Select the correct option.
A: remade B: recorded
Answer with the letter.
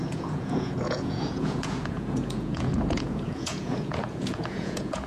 A